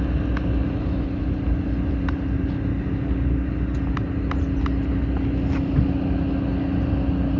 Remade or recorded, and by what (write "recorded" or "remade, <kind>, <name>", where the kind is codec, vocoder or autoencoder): recorded